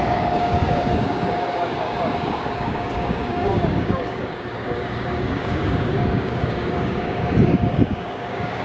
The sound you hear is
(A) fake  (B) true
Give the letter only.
A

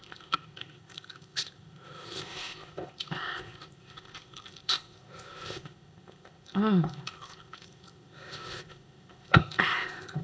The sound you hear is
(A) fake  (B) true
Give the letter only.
A